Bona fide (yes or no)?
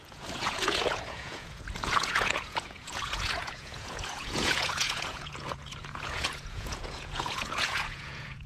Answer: no